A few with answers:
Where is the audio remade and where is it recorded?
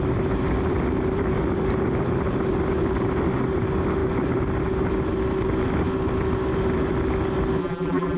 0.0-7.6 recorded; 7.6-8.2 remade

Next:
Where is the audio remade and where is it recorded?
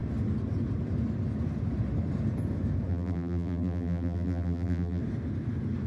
0.0-2.9 recorded; 2.9-5.0 remade; 5.0-5.9 recorded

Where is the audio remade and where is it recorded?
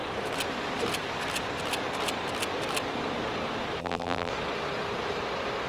0.0-3.8 recorded; 3.8-4.3 remade; 4.3-5.7 recorded